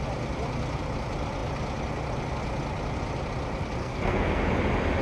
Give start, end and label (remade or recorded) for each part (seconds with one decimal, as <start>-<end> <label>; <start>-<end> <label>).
0.0-3.8 recorded; 3.8-4.5 remade; 4.5-5.0 recorded